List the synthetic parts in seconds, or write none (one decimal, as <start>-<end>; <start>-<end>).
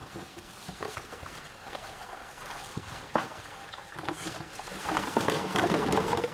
0.0-6.3